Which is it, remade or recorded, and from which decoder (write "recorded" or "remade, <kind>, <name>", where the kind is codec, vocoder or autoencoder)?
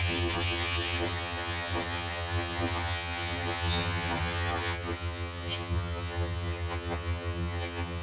remade, vocoder, HiFi-GAN